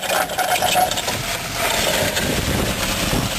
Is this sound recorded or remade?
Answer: recorded